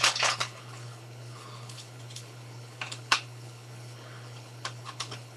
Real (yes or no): no